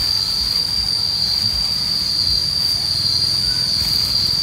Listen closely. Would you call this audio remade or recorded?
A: recorded